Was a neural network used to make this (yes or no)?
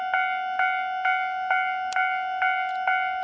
no